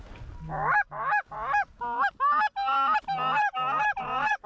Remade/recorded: recorded